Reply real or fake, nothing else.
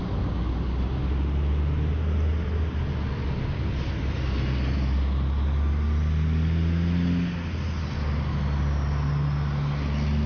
real